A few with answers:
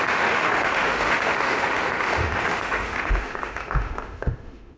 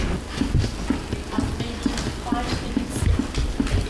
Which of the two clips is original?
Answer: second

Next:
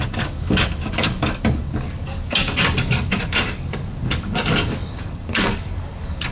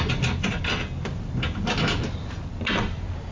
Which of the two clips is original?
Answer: second